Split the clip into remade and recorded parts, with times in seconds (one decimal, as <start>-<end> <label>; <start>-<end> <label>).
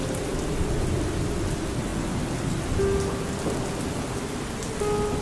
0.0-5.2 recorded